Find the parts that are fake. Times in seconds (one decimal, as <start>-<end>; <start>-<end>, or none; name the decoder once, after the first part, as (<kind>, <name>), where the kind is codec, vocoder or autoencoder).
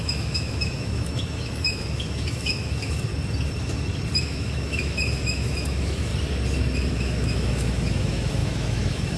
0.0-3.1 (autoencoder, DAC-VAE); 4.2-6.1; 6.9-9.2